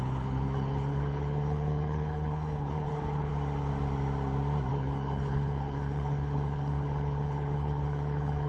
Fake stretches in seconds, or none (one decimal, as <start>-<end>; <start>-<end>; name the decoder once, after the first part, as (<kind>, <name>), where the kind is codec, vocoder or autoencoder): 0.0-3.3 (codec, HILCodec); 4.7-8.5